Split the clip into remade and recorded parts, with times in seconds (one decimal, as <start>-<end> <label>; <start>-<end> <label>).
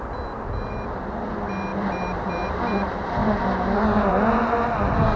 0.0-5.2 recorded